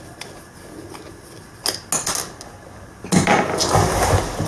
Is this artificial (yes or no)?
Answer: no